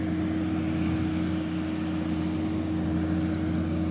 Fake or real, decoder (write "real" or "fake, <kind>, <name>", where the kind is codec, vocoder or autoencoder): real